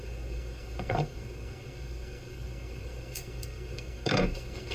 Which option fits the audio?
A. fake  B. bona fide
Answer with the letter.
A